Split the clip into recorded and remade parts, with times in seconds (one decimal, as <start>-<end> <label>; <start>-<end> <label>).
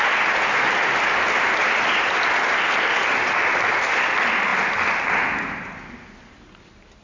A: 0.0-7.0 recorded